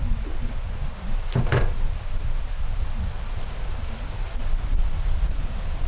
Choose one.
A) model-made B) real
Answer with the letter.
B